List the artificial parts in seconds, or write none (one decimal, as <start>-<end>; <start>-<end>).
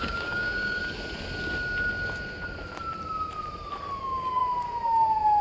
0.0-0.8; 4.0-4.4